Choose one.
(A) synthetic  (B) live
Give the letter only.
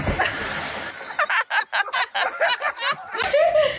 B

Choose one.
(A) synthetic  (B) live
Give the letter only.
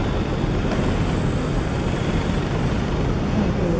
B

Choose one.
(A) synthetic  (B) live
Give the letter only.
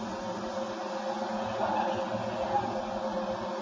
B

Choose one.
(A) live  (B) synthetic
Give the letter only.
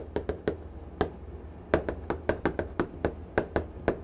A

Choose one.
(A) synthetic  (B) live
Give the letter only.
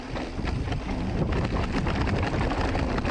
B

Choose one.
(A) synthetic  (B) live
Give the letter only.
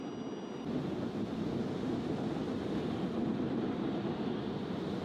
B